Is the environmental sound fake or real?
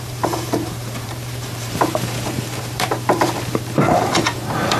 fake